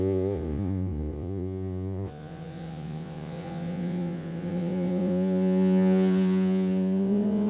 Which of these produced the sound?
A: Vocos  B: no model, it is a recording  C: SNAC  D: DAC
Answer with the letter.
A